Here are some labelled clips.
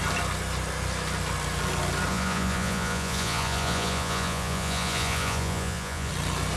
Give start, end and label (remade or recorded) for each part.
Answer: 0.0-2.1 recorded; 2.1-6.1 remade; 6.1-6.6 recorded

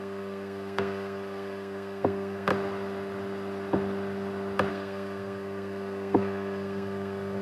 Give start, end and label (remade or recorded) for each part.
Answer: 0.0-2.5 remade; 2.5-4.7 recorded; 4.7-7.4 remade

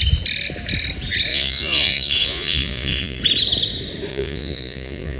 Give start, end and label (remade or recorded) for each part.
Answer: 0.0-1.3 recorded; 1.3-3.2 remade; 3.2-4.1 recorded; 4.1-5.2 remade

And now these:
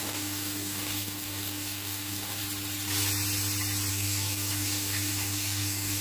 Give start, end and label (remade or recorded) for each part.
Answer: 0.0-2.4 remade; 2.4-3.9 recorded; 3.9-6.0 remade

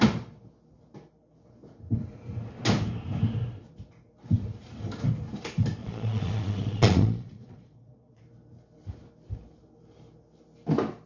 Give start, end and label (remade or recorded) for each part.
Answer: 0.0-5.8 recorded; 5.8-8.2 remade; 8.2-11.1 recorded

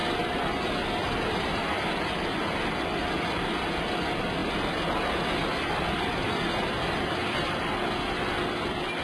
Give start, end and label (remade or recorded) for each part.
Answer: 0.0-9.0 recorded

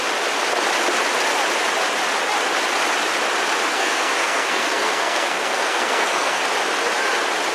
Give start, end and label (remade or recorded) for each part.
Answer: 0.0-3.7 recorded; 3.7-6.4 remade; 6.4-7.5 recorded

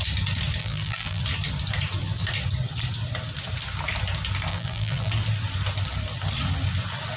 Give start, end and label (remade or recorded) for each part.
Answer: 0.0-0.6 recorded; 0.6-1.2 remade; 1.2-4.5 recorded; 4.5-5.1 remade; 5.1-7.2 recorded